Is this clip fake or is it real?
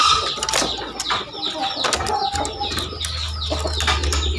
real